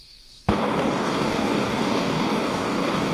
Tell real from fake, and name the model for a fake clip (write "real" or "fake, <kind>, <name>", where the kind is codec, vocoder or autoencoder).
fake, codec, DAC